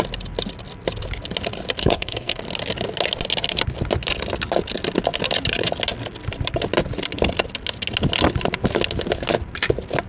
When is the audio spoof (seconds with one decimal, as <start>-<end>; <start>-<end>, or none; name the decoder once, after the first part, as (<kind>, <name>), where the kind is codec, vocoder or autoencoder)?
1.8-2.4 (codec, SNAC)